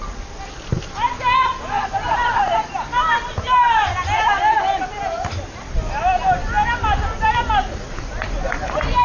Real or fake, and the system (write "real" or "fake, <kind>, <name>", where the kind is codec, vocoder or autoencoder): real